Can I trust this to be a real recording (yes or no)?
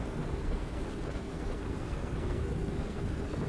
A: no